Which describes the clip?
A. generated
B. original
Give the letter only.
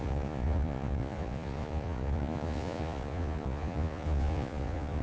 A